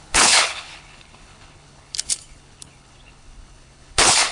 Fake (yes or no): yes